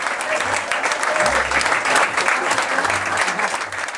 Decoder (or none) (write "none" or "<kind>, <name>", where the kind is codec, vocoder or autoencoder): none